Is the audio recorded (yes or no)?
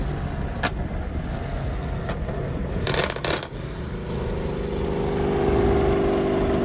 yes